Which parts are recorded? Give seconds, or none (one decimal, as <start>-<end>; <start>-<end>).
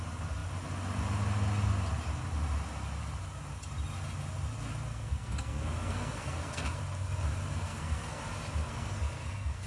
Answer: 0.0-4.9; 6.8-7.5; 8.2-8.6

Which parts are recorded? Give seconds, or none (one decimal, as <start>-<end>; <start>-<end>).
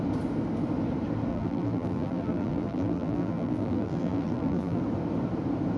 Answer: 0.0-1.3; 4.8-5.8